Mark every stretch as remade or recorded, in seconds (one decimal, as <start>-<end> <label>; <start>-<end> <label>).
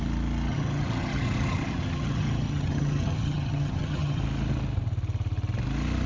0.0-0.5 recorded; 0.5-4.2 remade; 4.2-6.1 recorded